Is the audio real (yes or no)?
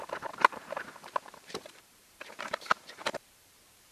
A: no